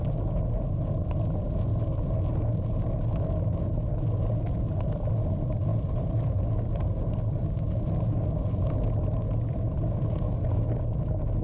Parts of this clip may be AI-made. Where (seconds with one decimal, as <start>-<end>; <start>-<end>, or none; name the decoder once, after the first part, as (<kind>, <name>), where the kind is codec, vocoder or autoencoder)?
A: none